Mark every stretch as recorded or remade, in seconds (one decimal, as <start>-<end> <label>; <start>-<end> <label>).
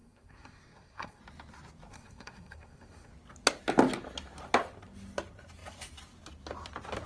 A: 0.0-1.2 remade; 1.2-1.9 recorded; 1.9-3.1 remade; 3.1-7.1 recorded